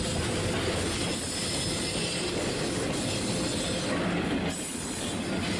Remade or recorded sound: recorded